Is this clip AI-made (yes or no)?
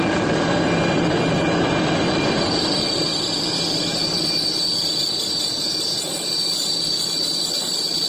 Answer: yes